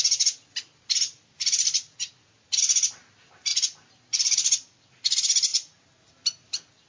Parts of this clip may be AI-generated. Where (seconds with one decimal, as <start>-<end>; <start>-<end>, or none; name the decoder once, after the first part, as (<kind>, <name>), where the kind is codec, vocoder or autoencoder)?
none